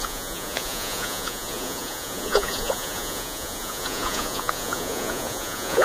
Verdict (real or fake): fake